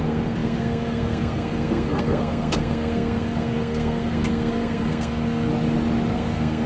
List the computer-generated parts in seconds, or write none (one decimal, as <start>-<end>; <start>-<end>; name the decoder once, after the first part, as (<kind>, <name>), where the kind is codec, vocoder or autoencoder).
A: 0.0-5.5 (codec, SNAC); 6.1-6.7